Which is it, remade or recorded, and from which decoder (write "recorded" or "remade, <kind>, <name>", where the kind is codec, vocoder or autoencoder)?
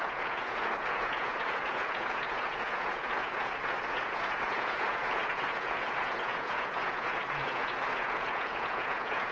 remade, vocoder, Vocos